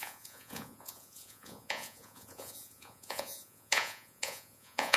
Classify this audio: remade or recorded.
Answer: remade